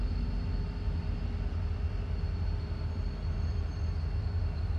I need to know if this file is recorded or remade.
recorded